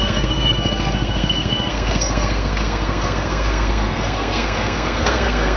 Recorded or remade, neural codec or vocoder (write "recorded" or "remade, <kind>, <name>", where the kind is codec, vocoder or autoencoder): remade, codec, SNAC